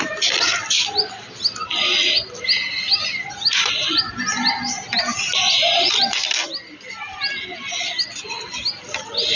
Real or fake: real